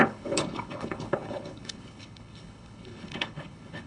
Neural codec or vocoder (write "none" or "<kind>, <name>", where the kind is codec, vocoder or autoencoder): codec, HILCodec